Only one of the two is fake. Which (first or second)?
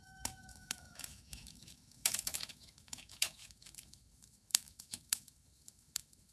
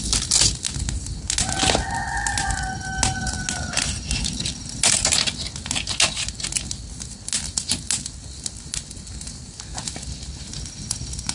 first